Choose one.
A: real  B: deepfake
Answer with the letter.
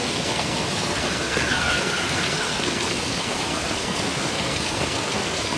B